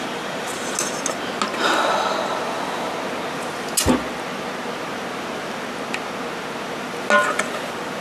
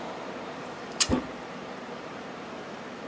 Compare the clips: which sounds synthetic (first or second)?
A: second